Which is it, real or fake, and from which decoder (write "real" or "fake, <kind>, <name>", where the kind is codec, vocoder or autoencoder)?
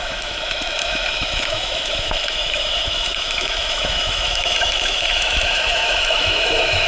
fake, autoencoder, DAC-VAE